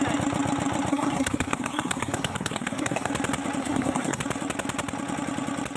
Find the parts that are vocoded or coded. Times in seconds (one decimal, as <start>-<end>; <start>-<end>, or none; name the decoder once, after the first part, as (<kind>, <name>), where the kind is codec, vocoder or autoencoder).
0.9-3.1 (codec, SNAC); 3.6-4.2